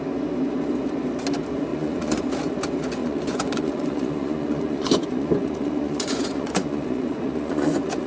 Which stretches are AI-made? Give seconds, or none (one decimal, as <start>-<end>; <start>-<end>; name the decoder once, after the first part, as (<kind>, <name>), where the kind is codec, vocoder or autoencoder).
1.7-2.3 (vocoder, Vocos); 3.0-8.1